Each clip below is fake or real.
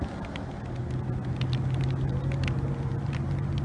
real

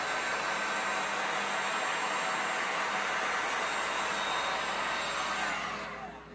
real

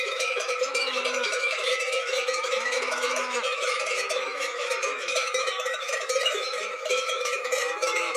fake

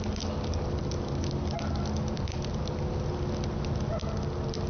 real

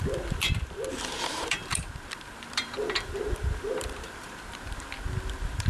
fake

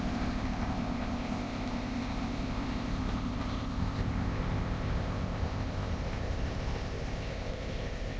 fake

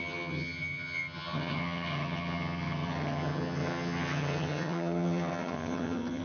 fake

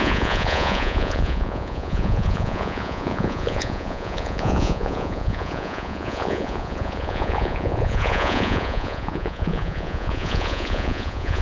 fake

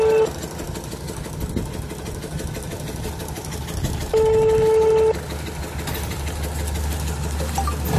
real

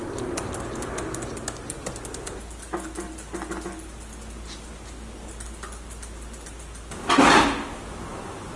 real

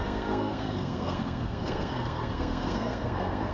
fake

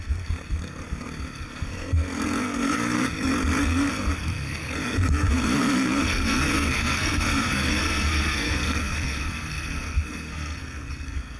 fake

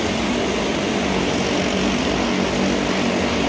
real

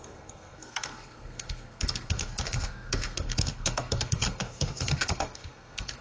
fake